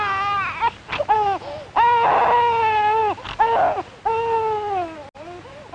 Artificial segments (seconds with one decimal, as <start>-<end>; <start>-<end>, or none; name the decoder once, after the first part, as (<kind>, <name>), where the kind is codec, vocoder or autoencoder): none